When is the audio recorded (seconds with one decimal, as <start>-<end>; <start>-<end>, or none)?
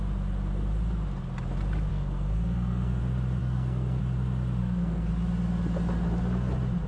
0.0-1.9; 3.0-3.4; 4.0-4.6; 5.1-6.9